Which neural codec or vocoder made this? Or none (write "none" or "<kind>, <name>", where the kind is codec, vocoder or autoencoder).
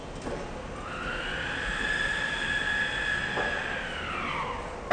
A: none